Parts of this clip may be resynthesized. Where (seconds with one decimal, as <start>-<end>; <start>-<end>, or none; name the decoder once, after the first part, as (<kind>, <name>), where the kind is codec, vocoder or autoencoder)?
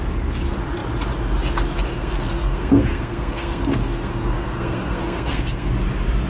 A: 1.9-5.7 (codec, SNAC)